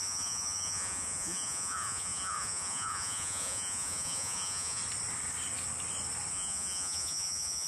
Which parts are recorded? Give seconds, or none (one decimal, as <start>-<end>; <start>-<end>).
4.8-6.3